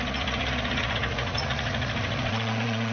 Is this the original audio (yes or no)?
no